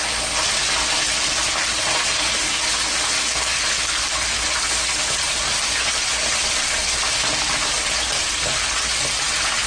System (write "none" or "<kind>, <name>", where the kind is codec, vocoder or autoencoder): none